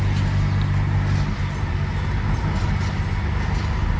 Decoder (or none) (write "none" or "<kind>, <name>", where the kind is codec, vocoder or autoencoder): none